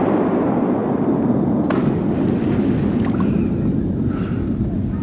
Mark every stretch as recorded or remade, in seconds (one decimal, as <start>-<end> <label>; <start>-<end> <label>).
0.0-5.0 recorded